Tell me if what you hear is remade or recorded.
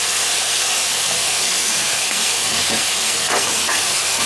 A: remade